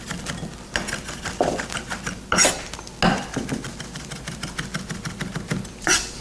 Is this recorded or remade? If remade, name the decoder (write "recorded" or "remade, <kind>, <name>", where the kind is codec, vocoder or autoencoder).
recorded